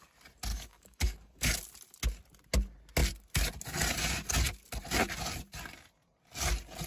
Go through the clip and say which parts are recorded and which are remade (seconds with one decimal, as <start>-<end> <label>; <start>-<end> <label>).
0.0-0.5 recorded; 0.5-1.6 remade; 1.6-6.9 recorded